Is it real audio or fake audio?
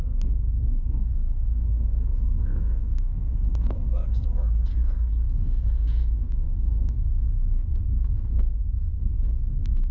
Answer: fake